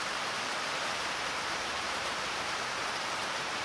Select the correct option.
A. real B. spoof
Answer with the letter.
B